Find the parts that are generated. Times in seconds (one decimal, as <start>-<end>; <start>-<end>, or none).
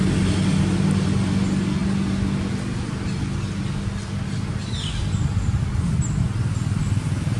none